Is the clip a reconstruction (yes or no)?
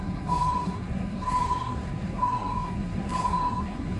yes